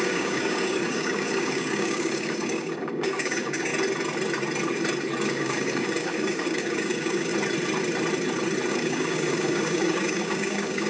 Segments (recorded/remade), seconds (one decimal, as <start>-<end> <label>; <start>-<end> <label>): 0.0-3.7 remade; 3.7-5.3 recorded; 5.3-7.3 remade; 7.3-8.7 recorded; 8.7-10.9 remade